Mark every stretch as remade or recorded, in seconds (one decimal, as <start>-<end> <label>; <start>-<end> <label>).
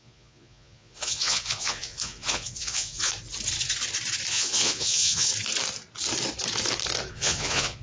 0.0-3.1 remade; 3.1-4.3 recorded; 4.3-5.3 remade; 5.3-7.1 recorded; 7.1-7.8 remade